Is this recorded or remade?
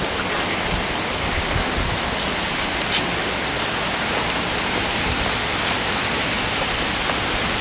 recorded